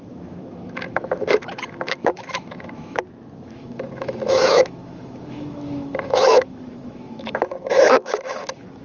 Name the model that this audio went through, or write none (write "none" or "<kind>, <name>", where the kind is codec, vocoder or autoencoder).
autoencoder, DAC-VAE